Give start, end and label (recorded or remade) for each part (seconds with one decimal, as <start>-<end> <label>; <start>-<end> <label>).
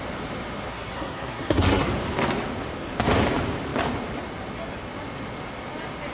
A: 0.0-0.7 recorded; 0.7-1.9 remade; 1.9-6.1 recorded